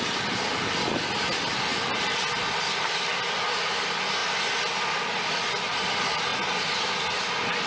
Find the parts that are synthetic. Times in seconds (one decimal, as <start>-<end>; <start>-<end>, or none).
none